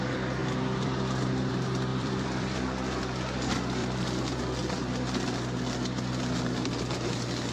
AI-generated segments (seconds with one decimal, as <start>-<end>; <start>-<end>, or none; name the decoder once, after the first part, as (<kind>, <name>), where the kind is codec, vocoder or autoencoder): 1.9-2.6 (vocoder, BigVGAN v2); 3.8-4.4